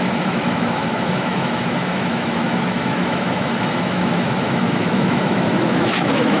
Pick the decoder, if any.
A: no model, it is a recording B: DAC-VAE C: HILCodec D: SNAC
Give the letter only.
B